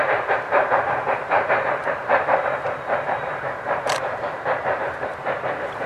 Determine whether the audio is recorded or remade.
remade